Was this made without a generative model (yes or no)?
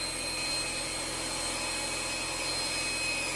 yes